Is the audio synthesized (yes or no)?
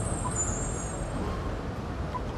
no